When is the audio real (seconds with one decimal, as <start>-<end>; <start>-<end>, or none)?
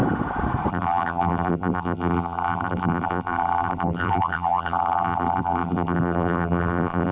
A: 0.0-0.7